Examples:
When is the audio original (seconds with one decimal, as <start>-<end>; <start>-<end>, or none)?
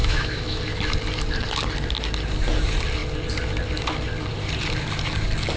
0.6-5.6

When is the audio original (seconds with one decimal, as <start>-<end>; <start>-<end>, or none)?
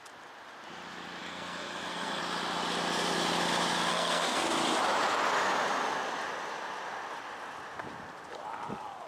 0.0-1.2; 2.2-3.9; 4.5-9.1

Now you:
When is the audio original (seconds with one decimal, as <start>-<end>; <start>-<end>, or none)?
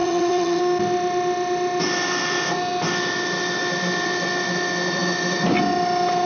0.6-6.3